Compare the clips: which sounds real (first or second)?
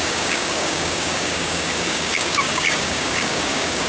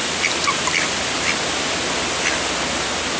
second